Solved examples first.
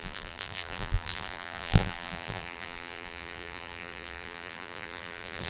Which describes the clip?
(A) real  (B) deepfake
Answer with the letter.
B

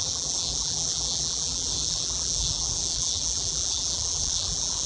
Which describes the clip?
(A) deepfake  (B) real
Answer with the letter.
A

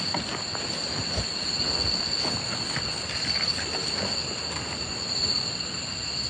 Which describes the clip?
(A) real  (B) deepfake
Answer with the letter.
A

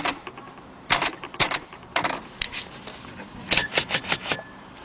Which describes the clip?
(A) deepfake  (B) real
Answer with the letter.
A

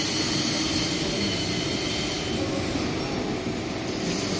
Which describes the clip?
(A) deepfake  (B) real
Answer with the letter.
B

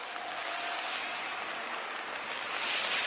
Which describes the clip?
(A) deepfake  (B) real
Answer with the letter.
B